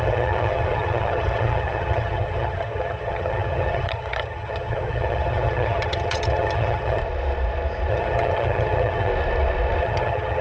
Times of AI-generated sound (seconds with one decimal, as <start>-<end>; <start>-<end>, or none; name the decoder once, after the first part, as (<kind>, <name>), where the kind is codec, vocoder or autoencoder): 0.0-7.0 (vocoder, HiFi-GAN); 7.9-9.1; 9.8-10.4